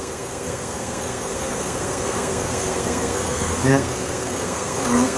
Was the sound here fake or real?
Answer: fake